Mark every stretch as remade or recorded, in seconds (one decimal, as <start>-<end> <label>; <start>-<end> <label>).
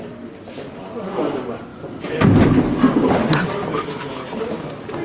0.0-5.0 recorded